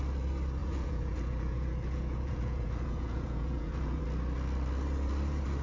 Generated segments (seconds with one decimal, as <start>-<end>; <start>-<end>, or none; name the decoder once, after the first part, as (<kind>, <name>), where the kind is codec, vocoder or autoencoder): 0.6-4.0 (vocoder, Vocos)